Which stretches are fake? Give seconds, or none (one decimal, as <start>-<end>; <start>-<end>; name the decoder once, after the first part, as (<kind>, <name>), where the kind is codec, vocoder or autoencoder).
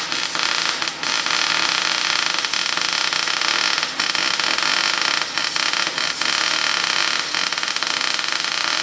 none